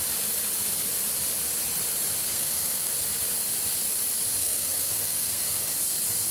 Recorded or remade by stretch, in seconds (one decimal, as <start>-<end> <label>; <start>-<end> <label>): 0.0-2.3 recorded; 2.3-2.9 remade; 2.9-4.4 recorded; 4.4-5.7 remade; 5.7-6.3 recorded